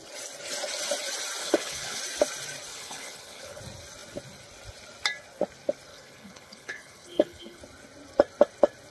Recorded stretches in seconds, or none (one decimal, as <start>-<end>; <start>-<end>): 0.0-1.4; 2.0-2.7; 3.6-5.9; 7.6-8.9